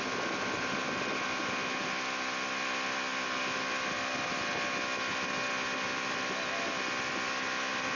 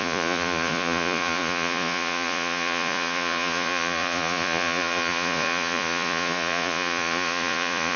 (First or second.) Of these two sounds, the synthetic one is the second